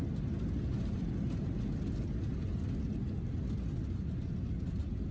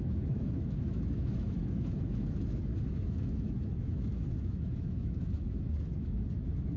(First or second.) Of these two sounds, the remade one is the second